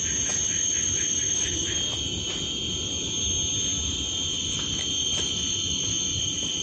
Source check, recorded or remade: recorded